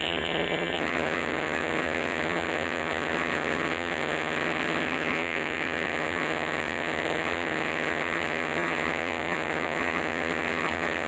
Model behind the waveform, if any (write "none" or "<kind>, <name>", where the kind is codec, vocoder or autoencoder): vocoder, HiFi-GAN